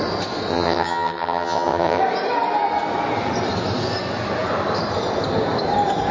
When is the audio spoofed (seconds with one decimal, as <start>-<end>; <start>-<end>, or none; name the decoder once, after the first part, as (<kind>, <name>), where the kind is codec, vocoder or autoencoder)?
0.5-2.0 (vocoder, HiFi-GAN)